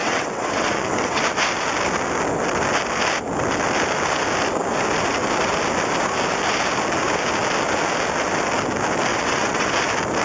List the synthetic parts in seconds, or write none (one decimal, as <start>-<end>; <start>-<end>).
0.0-1.2; 9.1-9.7